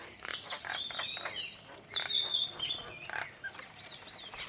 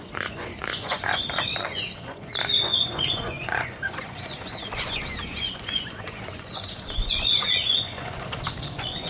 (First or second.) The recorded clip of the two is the first